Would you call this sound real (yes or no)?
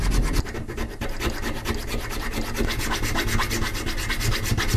yes